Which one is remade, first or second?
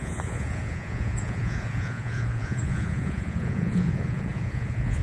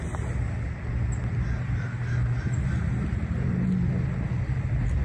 first